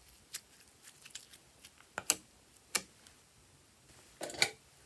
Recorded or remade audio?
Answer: recorded